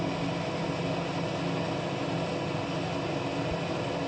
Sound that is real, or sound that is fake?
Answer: real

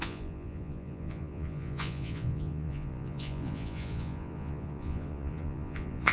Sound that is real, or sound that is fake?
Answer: fake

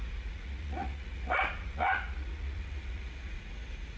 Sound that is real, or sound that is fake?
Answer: fake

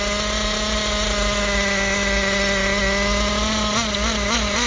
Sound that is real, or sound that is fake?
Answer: real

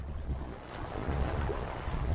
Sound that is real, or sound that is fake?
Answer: fake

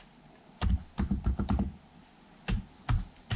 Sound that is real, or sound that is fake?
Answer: real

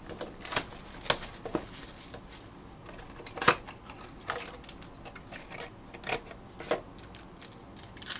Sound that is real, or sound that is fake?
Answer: real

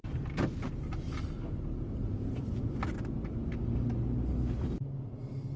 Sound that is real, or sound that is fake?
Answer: real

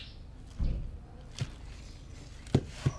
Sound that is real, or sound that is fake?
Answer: real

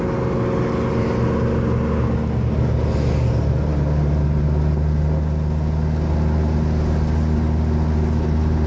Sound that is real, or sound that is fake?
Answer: real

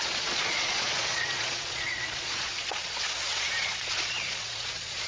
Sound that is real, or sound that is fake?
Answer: fake